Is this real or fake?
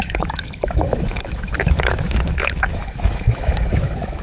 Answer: fake